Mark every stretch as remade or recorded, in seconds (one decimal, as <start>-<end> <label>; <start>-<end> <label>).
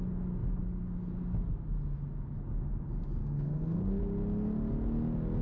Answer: 0.0-3.2 recorded; 3.2-4.0 remade; 4.0-5.4 recorded